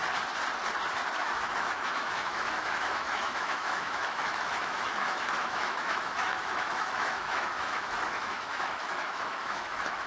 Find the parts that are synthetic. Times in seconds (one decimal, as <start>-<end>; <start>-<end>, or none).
1.2-10.1